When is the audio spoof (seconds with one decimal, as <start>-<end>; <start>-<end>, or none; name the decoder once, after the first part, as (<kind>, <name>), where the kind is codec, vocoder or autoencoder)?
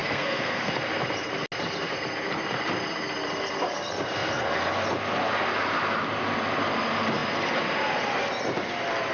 0.0-0.7 (codec, SNAC)